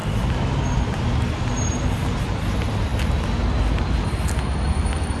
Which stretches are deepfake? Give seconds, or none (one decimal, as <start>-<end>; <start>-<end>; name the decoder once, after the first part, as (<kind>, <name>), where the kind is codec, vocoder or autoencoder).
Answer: none

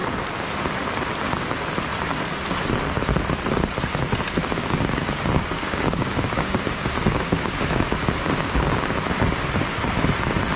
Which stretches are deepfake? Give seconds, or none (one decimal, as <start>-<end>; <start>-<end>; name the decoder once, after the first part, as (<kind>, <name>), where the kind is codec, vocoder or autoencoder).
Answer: 4.4-8.9 (codec, DAC)

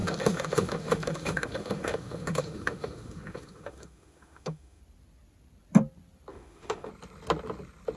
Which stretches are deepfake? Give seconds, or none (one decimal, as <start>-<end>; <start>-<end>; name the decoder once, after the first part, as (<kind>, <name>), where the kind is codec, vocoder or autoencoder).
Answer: 0.0-4.8 (autoencoder, DAC-VAE); 6.3-6.9